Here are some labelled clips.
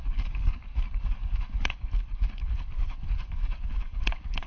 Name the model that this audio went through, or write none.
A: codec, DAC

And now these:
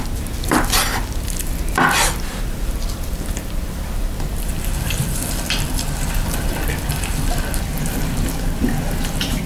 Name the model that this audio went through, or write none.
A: vocoder, BigVGAN v2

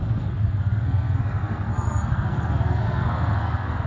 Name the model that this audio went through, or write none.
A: codec, SNAC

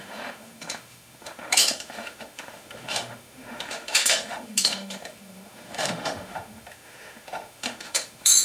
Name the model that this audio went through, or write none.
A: autoencoder, DAC-VAE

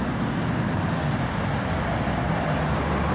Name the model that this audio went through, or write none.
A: none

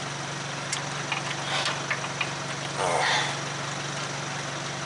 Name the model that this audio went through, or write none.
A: none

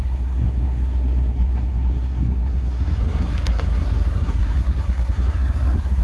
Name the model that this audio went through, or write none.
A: codec, SNAC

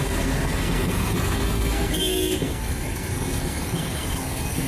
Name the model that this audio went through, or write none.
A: codec, SNAC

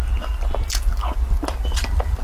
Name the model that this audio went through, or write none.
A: none